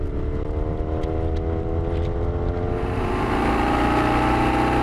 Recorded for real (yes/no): yes